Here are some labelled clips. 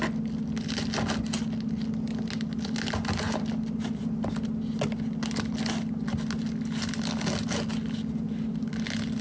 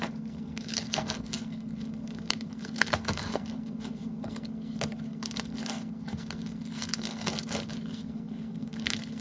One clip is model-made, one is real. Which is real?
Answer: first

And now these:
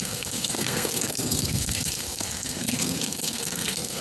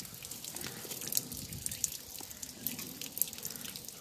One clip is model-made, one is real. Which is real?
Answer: second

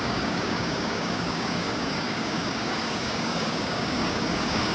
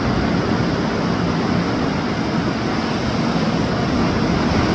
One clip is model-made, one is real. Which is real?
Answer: second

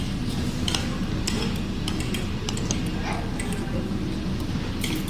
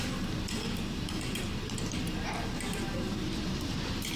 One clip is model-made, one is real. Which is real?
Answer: first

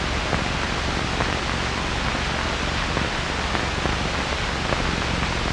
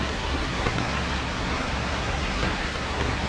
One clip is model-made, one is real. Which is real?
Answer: first